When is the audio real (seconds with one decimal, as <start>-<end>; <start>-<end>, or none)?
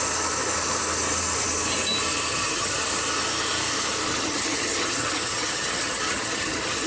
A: 0.0-2.3; 2.8-4.1